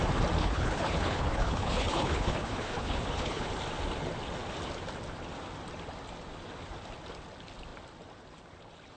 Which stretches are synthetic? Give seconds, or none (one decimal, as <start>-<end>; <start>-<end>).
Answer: 0.4-3.5